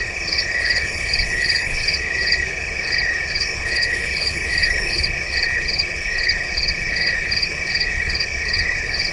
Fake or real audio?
fake